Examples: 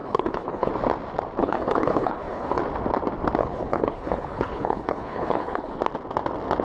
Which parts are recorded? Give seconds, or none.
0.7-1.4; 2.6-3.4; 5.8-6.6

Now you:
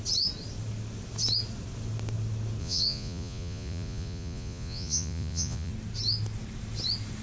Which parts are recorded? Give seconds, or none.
0.0-2.6; 5.7-7.2

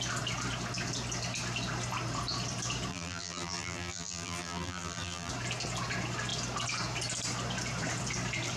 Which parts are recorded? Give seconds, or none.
0.0-2.9; 5.3-8.6

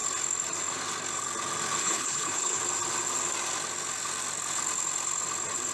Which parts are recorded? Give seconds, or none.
0.0-1.8; 2.6-5.7

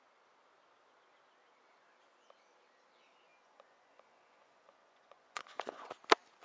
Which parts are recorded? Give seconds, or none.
0.0-3.3; 5.9-6.4